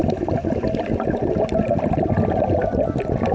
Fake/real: real